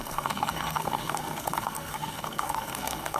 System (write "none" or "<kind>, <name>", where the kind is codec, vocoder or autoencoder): codec, SNAC